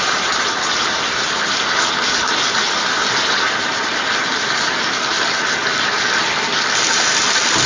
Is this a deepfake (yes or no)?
no